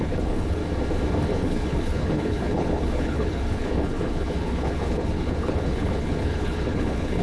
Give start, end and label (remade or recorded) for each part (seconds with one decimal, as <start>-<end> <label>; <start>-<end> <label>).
0.0-0.6 remade; 0.6-1.3 recorded; 1.3-7.2 remade